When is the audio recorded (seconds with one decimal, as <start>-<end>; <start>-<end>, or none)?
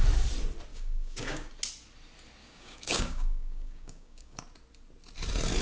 0.0-0.7; 1.5-2.4; 4.4-5.6